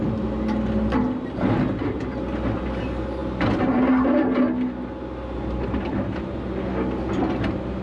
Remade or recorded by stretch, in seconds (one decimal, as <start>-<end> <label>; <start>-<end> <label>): 0.0-7.8 recorded